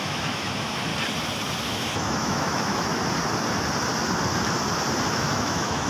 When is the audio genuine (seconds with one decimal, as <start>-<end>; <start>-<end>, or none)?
0.9-1.6; 2.9-5.1